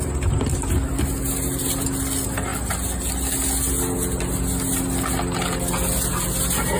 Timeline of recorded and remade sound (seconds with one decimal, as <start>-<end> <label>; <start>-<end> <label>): 0.0-6.8 recorded